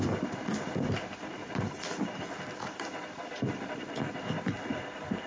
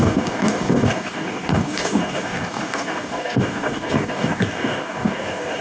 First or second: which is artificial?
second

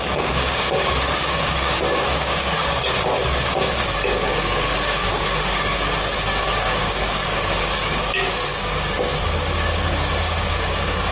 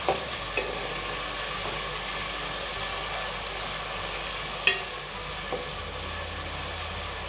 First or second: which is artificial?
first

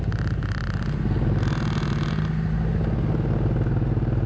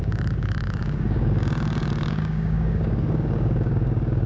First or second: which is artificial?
second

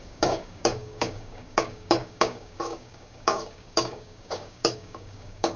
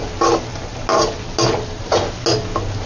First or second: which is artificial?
first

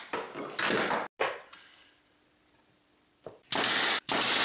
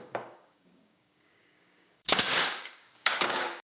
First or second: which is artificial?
second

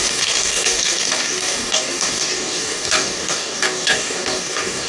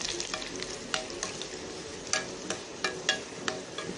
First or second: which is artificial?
first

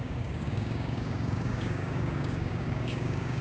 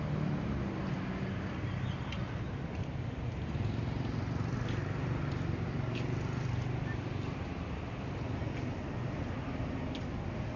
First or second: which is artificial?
first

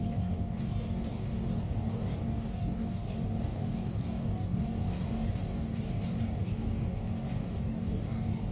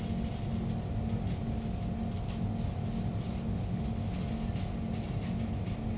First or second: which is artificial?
first